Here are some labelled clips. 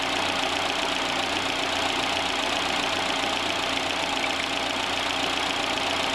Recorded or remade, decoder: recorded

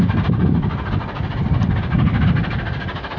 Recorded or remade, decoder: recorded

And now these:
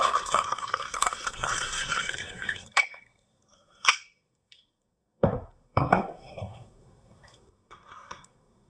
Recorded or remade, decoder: remade, codec, SNAC